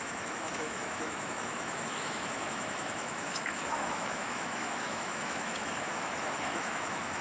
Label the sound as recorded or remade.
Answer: remade